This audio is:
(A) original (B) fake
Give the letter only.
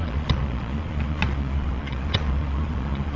B